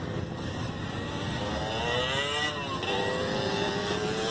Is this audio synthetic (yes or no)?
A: no